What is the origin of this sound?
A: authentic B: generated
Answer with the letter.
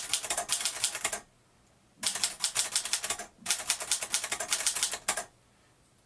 A